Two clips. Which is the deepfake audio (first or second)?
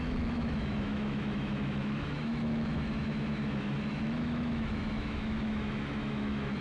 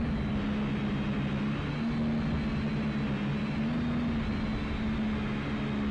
first